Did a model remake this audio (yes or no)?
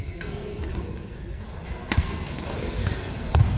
yes